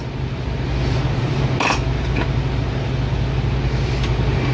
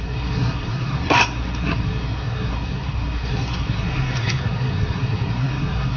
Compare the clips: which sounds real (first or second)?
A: first